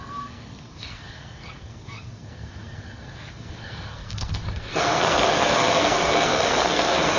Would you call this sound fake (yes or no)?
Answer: yes